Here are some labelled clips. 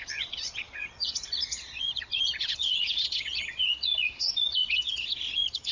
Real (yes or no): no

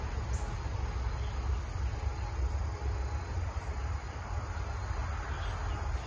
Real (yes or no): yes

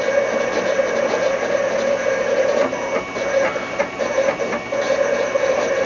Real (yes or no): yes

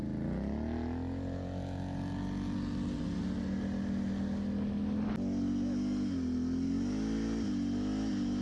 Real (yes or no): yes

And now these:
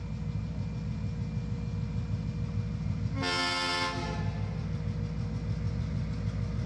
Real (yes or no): yes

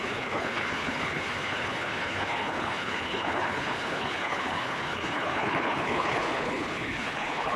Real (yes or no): no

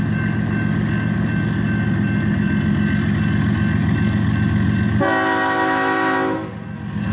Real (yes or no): yes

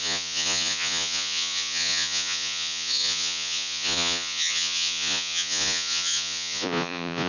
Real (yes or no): no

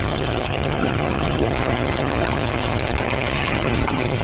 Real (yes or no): no